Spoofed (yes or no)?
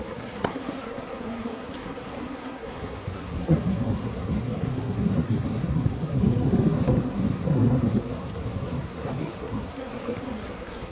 yes